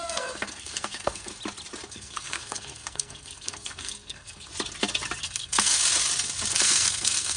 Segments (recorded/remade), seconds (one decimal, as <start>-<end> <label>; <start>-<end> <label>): 0.0-1.3 remade; 1.3-1.9 recorded; 1.9-4.5 remade; 4.5-5.2 recorded; 5.2-5.8 remade; 5.8-6.5 recorded; 6.5-7.4 remade